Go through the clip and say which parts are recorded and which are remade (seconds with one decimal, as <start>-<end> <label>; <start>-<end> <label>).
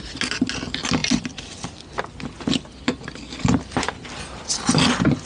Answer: 0.0-5.3 recorded